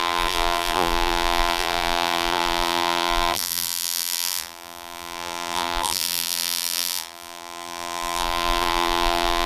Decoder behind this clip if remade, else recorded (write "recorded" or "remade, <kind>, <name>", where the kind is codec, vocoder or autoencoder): remade, vocoder, BigVGAN v2